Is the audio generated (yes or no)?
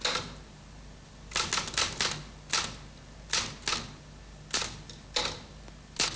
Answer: no